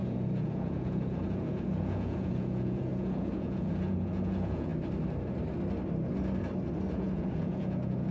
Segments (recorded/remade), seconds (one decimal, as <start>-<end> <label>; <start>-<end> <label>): 0.0-4.7 remade; 4.7-6.9 recorded; 6.9-8.1 remade